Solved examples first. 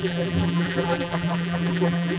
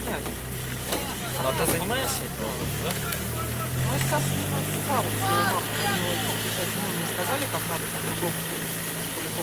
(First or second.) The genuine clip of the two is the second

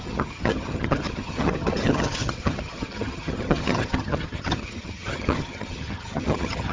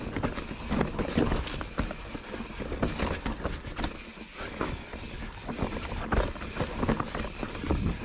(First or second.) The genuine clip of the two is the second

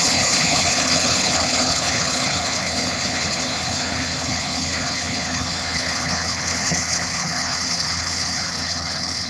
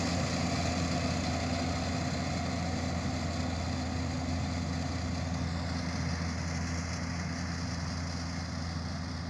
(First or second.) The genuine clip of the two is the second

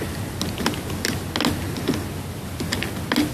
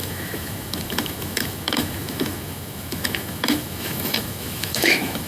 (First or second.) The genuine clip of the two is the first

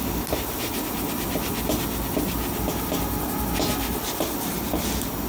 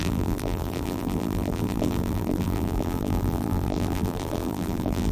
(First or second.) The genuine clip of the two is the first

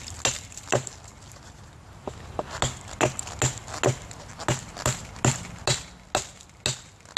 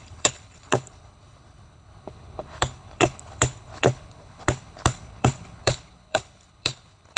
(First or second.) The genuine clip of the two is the first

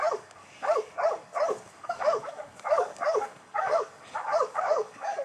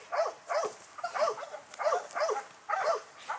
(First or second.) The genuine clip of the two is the second